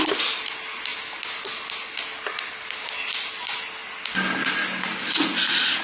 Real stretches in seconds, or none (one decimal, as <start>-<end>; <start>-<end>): 0.0-5.8